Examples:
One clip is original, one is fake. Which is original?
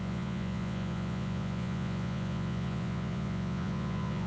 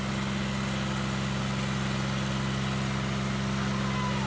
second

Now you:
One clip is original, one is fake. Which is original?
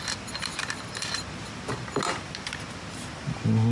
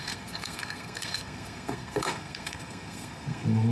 first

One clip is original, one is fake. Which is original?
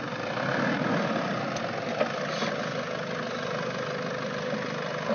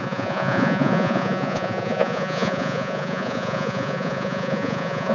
first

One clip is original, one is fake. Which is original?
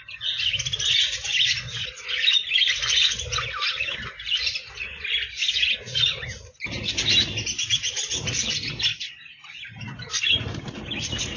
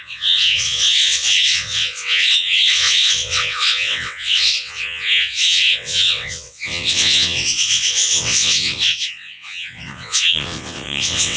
first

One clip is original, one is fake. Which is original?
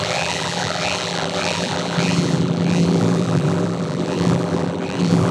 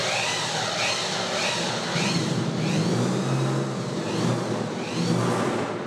second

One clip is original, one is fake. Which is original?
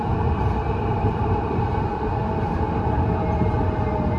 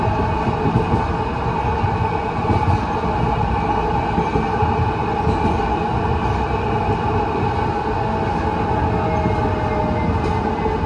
second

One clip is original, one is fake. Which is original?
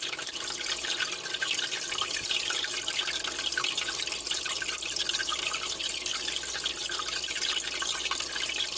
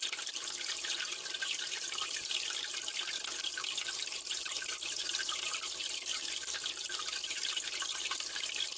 first